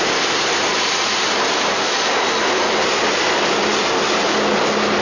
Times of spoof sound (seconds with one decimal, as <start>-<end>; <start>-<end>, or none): none